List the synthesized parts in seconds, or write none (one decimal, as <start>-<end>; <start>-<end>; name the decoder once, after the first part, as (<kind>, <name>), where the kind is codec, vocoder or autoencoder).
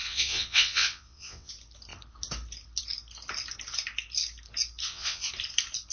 0.0-1.5 (vocoder, WaveNeXt); 4.8-5.3